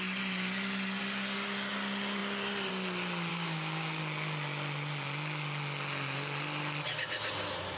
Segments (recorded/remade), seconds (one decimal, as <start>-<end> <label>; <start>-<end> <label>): 0.0-3.3 recorded; 3.3-4.0 remade; 4.0-7.8 recorded